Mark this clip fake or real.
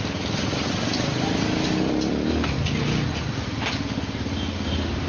real